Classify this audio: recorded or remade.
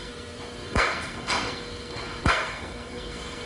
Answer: remade